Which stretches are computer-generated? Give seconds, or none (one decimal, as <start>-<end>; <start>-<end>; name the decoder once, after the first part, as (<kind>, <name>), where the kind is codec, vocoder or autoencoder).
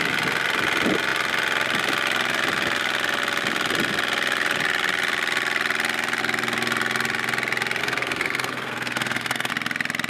7.8-9.5 (codec, SNAC)